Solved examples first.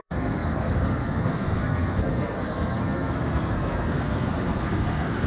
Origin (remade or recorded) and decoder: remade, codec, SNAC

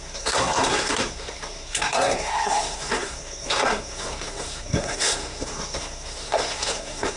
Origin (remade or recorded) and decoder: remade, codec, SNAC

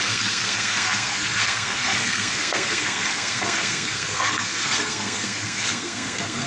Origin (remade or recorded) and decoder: remade, codec, SNAC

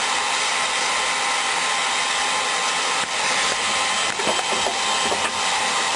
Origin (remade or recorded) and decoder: recorded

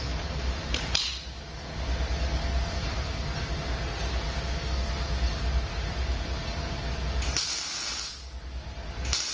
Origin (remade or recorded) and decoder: recorded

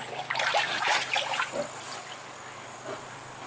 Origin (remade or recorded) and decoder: recorded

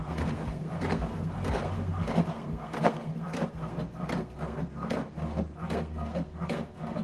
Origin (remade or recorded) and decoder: remade, codec, SNAC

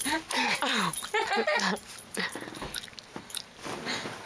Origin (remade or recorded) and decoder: recorded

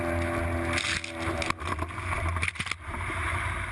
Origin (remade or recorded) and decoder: recorded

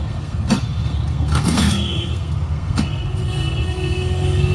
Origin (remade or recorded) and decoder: remade, codec, SNAC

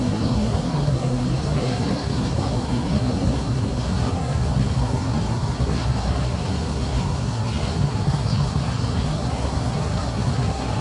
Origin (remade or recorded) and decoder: remade, codec, SNAC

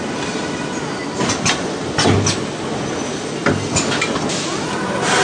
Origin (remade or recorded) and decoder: recorded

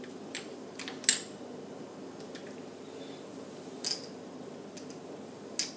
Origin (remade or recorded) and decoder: recorded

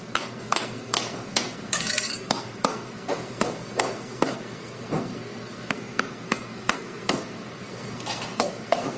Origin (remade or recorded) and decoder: remade, codec, SNAC